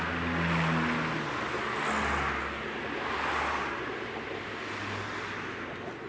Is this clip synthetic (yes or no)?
no